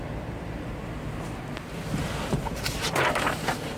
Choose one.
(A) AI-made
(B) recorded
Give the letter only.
B